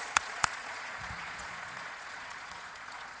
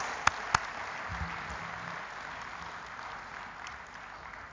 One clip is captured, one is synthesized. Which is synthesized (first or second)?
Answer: first